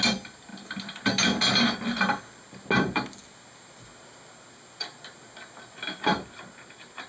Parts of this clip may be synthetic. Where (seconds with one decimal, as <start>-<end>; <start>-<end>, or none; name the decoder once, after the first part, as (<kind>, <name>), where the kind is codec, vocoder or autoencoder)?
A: none